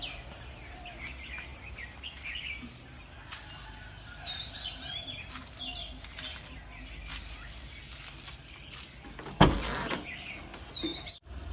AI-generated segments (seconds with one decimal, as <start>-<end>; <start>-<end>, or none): 4.3-5.6; 10.9-11.5